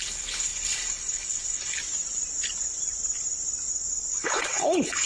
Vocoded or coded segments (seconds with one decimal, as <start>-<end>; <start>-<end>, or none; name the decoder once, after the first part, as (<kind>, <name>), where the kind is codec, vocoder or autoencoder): 0.0-1.8 (codec, HILCodec); 4.1-5.1